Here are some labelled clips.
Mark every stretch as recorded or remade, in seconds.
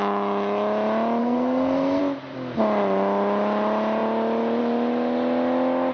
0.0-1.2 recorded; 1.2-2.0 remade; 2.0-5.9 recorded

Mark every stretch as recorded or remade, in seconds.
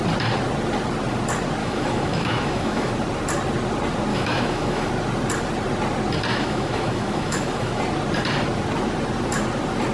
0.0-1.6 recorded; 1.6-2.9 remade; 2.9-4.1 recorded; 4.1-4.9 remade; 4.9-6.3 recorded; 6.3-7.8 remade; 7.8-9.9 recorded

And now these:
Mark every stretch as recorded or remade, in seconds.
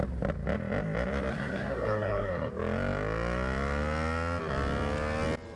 0.0-1.3 recorded; 1.3-2.5 remade; 2.5-5.6 recorded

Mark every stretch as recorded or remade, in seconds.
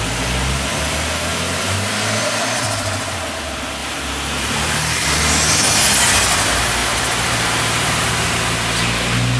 0.0-3.8 recorded; 3.8-5.2 remade; 5.2-6.8 recorded; 6.8-8.1 remade; 8.1-9.4 recorded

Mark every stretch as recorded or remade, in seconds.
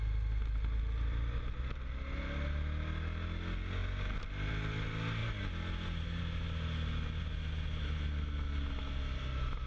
0.0-9.7 recorded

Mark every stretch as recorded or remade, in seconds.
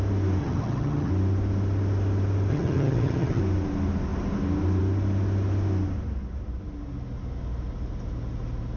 0.0-0.4 recorded; 0.4-1.1 remade; 1.1-2.5 recorded; 2.5-3.4 remade; 3.4-8.8 recorded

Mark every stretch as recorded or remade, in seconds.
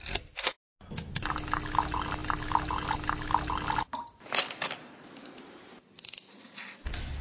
0.0-7.2 recorded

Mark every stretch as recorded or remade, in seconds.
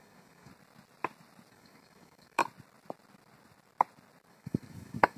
0.0-0.5 remade; 0.5-1.5 recorded; 1.5-2.4 remade; 2.4-4.3 recorded; 4.3-5.2 remade